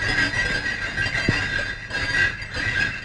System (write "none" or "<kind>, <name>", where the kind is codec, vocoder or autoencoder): none